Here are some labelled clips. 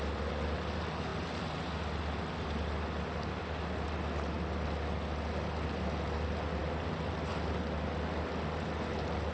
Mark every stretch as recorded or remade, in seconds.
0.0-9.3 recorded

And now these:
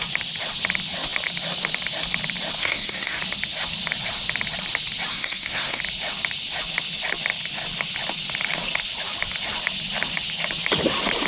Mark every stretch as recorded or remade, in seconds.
0.0-2.6 recorded; 2.6-3.2 remade; 3.2-5.1 recorded; 5.1-5.8 remade; 5.8-11.3 recorded

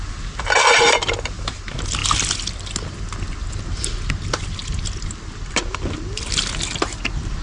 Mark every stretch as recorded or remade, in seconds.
0.0-7.4 recorded

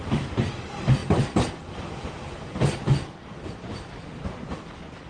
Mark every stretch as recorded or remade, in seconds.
0.0-5.1 recorded

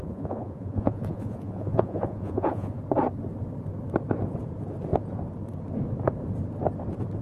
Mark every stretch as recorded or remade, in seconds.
0.0-2.8 remade; 2.8-7.2 recorded